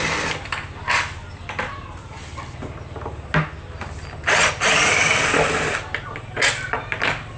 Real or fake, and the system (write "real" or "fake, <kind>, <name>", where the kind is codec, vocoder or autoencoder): real